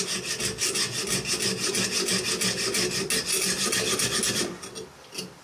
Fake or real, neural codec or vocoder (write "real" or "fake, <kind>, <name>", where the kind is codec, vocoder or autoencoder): real